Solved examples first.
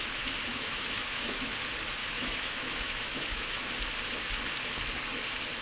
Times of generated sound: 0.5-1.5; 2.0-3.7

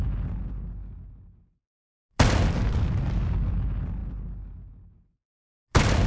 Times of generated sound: none

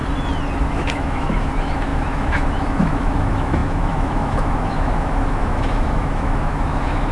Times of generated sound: 0.6-7.1

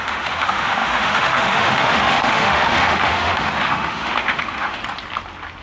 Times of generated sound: 0.0-4.8

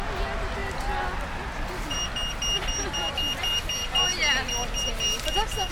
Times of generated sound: none